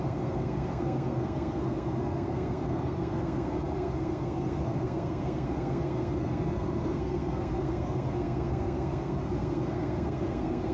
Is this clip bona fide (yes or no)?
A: no